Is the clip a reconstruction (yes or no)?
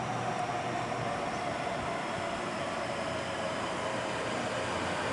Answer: no